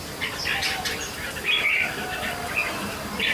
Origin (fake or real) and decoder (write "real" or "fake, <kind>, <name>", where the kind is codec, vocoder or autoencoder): real